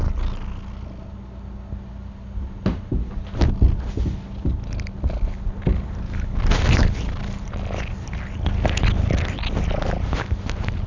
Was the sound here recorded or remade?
recorded